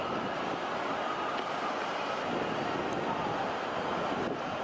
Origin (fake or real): real